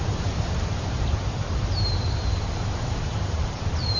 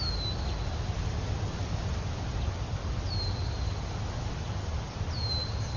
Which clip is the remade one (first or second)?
first